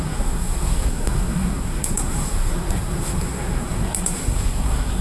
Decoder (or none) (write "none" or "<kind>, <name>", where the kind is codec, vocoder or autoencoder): codec, SNAC